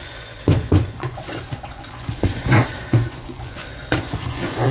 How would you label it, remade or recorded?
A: remade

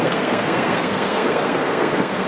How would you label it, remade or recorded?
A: remade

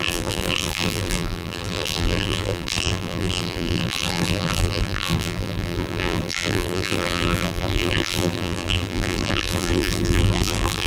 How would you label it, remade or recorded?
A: remade